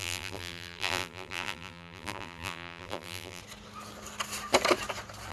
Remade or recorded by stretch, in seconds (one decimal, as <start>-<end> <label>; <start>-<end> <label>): 0.0-3.4 remade; 3.4-5.3 recorded